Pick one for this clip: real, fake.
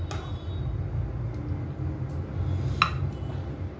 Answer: real